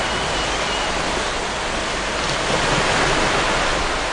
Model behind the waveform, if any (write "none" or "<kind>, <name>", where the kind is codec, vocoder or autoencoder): none